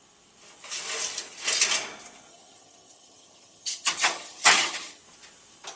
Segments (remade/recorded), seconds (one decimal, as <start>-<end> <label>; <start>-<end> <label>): 0.0-2.3 recorded; 2.3-5.0 remade; 5.0-5.8 recorded